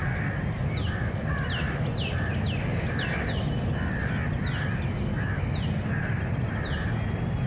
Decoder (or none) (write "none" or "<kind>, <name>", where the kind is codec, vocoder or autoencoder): none